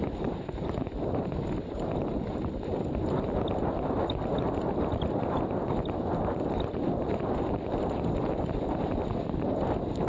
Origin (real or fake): real